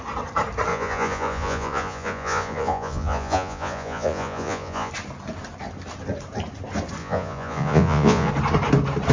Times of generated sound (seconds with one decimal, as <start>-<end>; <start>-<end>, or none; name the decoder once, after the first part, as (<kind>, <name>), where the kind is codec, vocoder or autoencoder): 0.7-4.9 (vocoder, Vocos); 7.0-8.3